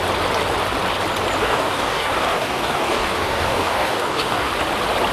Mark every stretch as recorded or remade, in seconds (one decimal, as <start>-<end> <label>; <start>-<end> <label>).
0.0-1.4 recorded; 1.4-4.5 remade; 4.5-5.1 recorded